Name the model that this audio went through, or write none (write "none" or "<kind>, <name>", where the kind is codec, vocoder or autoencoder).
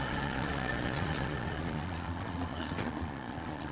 vocoder, Vocos